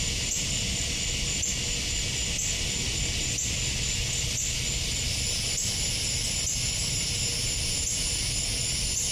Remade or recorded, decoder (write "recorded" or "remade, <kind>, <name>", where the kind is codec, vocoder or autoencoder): recorded